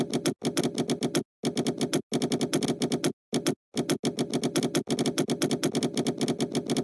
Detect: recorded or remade recorded